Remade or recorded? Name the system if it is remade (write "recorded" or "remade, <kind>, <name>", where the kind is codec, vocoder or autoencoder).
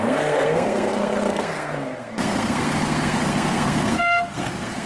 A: remade, codec, SNAC